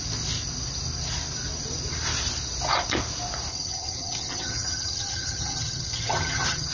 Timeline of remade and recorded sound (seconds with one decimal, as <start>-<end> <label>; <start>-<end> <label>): 0.0-3.5 recorded; 3.5-6.7 remade